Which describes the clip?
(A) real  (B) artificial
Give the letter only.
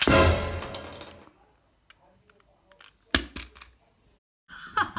A